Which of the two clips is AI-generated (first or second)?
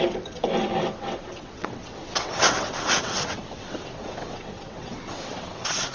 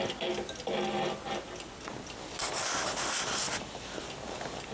first